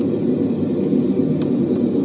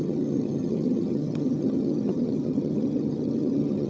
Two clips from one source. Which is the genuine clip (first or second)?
first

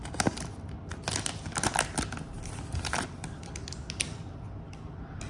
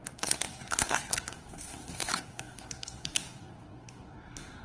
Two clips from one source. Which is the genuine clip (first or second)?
first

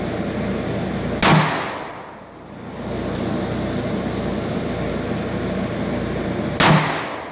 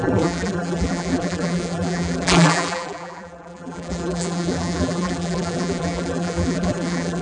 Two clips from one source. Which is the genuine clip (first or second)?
first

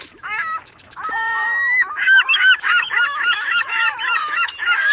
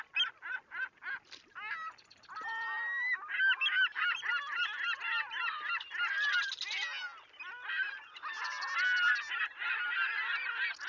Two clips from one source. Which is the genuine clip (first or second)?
second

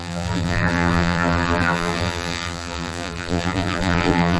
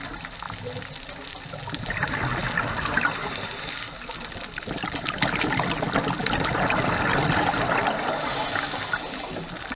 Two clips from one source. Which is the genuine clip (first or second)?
second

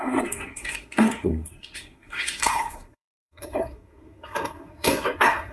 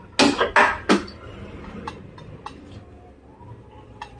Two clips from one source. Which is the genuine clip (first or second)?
second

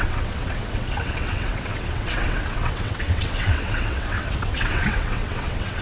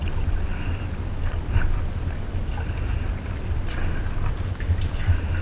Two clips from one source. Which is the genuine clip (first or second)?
second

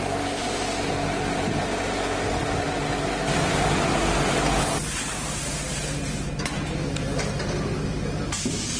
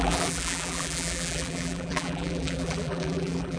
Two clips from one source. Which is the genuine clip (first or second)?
first